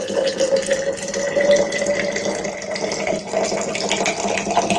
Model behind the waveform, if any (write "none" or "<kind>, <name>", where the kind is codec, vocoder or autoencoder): none